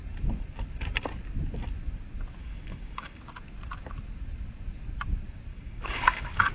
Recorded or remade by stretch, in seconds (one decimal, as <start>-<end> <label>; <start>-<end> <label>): 0.0-2.4 recorded; 2.4-3.2 remade; 3.2-5.5 recorded; 5.5-6.5 remade